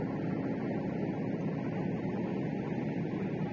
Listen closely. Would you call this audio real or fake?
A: real